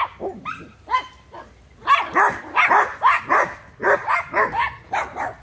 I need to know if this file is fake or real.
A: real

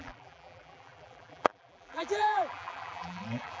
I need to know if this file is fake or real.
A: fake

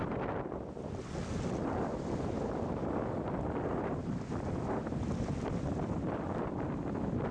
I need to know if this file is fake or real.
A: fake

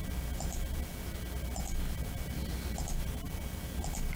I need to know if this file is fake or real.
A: real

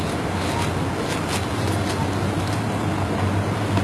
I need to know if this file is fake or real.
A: real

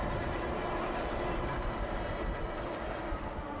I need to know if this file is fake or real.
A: real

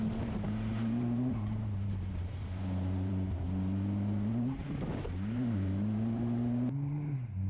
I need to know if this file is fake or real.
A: fake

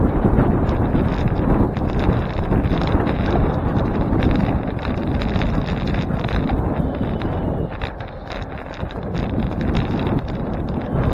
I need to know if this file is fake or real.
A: fake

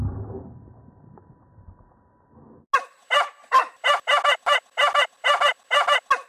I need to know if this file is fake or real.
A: real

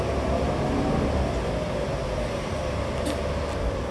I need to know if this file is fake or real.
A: real